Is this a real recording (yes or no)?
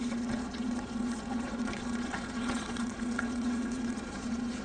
no